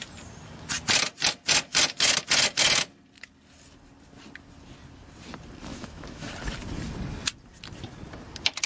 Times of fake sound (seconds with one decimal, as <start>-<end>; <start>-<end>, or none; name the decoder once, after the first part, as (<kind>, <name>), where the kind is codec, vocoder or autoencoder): 5.7-6.3 (autoencoder, DAC-VAE)